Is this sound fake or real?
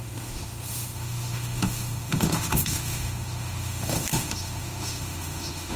fake